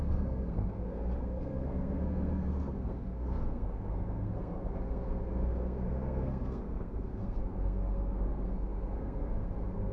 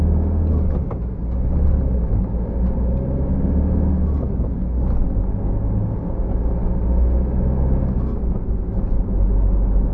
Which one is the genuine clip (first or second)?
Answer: second